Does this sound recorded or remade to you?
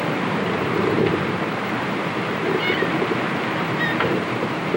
remade